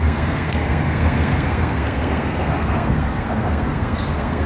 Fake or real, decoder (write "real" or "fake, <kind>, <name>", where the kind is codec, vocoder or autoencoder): fake, codec, SNAC